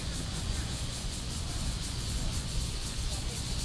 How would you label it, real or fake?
fake